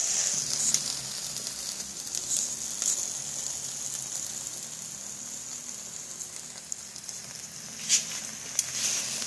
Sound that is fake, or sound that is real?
real